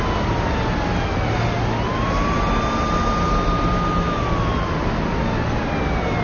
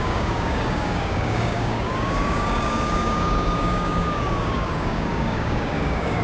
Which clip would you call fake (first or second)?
second